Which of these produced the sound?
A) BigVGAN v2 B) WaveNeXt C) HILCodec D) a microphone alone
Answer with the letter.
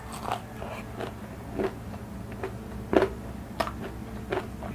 D